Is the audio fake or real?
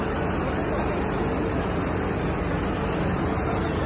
real